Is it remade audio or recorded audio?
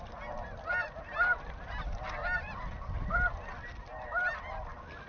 recorded